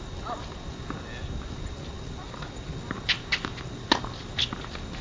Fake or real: real